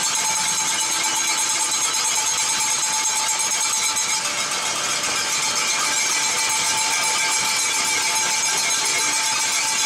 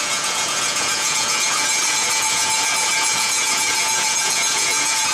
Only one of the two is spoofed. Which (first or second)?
second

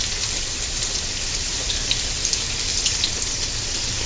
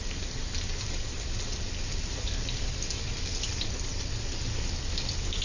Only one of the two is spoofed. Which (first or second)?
first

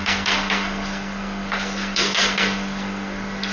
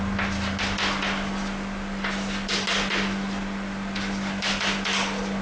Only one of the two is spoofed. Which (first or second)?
first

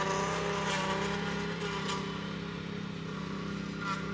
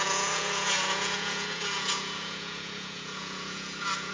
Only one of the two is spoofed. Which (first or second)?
second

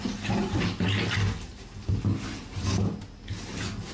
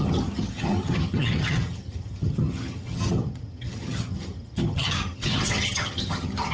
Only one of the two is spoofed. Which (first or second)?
second